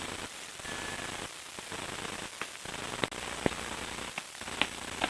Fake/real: real